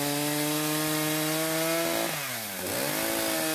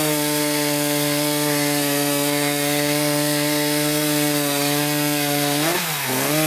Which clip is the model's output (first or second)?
second